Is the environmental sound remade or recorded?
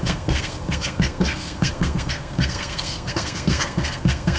remade